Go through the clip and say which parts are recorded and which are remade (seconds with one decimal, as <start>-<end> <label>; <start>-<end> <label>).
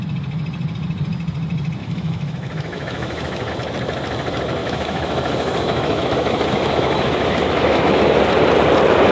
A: 0.0-1.8 recorded; 1.8-3.5 remade; 3.5-4.6 recorded; 4.6-8.2 remade; 8.2-9.1 recorded